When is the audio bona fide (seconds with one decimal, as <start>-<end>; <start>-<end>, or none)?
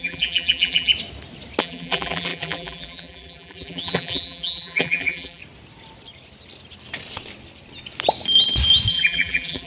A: 0.9-1.6; 5.4-8.9